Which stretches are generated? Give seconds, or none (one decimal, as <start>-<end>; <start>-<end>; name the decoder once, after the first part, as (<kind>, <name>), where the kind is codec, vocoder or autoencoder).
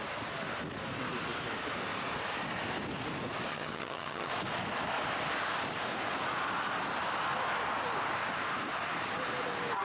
3.5-4.3 (vocoder, HiFi-GAN)